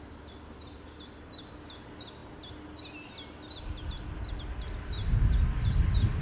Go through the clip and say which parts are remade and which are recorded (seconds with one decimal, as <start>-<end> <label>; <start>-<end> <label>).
0.0-6.2 recorded